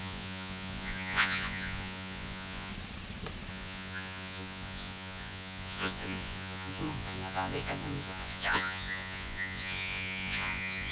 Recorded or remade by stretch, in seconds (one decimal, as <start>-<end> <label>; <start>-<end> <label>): 0.0-2.7 remade; 2.7-3.5 recorded; 3.5-10.9 remade